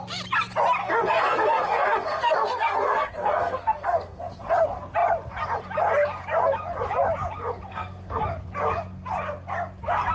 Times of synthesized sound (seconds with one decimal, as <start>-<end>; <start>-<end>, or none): 0.8-4.2; 7.7-8.2